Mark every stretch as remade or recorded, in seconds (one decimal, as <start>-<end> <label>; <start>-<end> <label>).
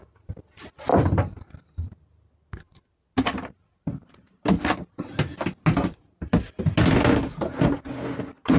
0.0-8.6 recorded